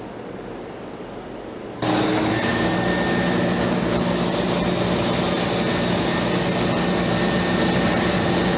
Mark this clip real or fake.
real